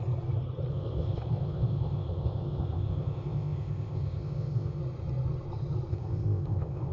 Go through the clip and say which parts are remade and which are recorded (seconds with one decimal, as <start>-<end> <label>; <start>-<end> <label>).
0.0-0.7 recorded; 0.7-4.8 remade; 4.8-5.9 recorded; 5.9-6.9 remade